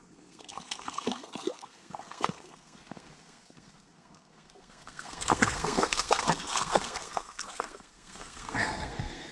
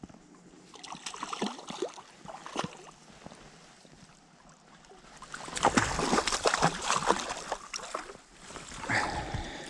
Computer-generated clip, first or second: first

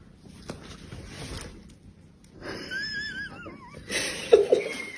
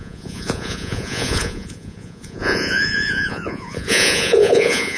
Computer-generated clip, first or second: second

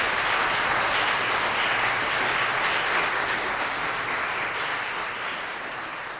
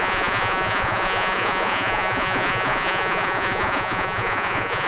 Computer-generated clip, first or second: second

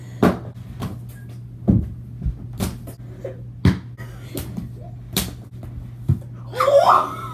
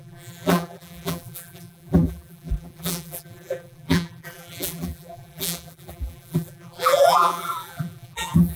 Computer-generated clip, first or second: second